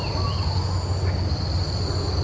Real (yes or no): yes